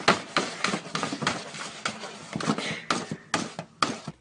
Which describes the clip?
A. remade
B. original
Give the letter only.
B